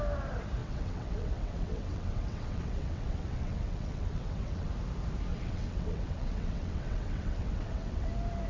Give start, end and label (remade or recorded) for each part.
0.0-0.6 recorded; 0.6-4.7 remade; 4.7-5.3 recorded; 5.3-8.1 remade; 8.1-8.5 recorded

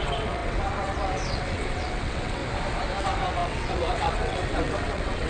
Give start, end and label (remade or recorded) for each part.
0.0-2.4 remade; 2.4-3.0 recorded; 3.0-5.3 remade

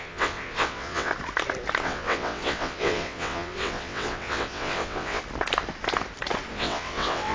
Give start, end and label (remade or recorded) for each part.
0.0-1.1 remade; 1.1-1.8 recorded; 1.8-5.2 remade; 5.2-6.5 recorded; 6.5-7.3 remade

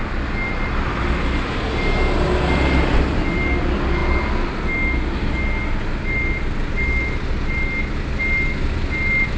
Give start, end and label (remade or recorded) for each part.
0.0-9.4 recorded